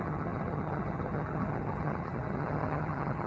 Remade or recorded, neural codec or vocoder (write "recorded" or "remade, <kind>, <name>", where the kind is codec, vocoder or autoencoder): remade, vocoder, HiFi-GAN